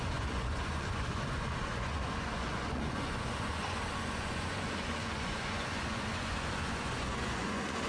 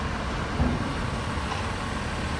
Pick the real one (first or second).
second